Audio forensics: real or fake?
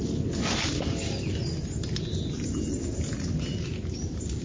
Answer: real